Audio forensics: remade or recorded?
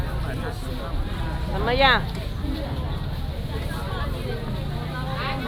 recorded